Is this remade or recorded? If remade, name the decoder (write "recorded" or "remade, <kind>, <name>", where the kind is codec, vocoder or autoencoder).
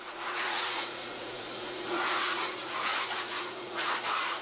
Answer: remade, vocoder, Vocos